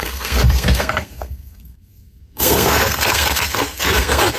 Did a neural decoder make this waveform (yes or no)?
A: yes